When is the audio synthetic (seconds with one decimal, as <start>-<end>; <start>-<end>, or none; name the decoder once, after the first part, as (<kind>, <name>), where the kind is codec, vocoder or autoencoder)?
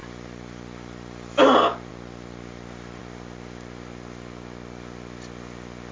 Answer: 0.0-1.3 (vocoder, BigVGAN v2); 1.9-3.0